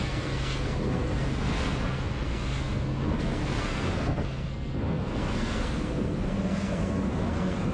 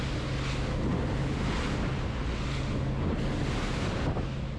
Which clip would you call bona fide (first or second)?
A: second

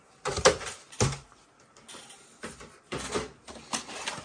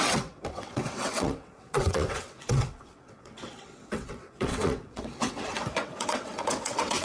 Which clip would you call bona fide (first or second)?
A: first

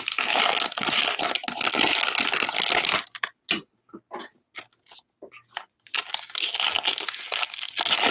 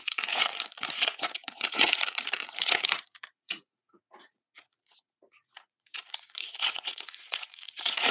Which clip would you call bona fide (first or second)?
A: first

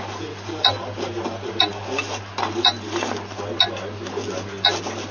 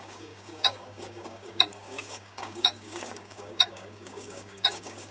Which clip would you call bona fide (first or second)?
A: first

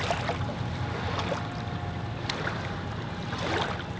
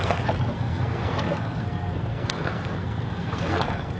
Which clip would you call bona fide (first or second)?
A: first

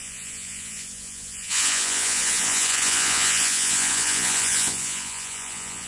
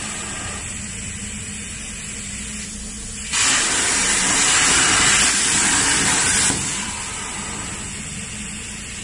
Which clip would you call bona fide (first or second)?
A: second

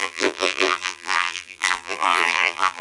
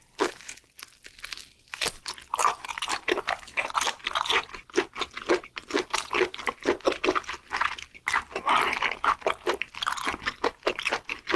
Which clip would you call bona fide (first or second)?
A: second